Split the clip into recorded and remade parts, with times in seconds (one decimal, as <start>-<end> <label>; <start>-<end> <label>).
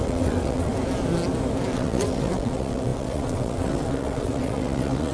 0.0-0.7 remade; 0.7-1.7 recorded; 1.7-5.1 remade